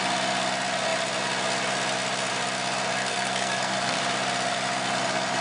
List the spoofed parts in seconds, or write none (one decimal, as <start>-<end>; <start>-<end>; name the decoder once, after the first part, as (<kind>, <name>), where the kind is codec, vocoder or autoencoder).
3.0-4.0 (codec, SNAC)